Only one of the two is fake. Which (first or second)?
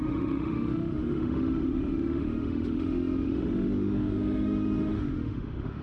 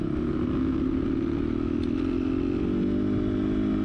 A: first